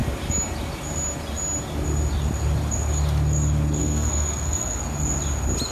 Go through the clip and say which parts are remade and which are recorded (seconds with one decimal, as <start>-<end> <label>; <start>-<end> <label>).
0.0-3.8 recorded; 3.8-4.8 remade; 4.8-5.7 recorded